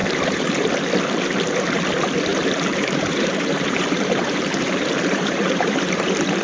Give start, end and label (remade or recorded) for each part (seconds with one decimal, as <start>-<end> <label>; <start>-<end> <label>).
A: 0.0-0.7 remade; 0.7-2.3 recorded; 2.3-6.4 remade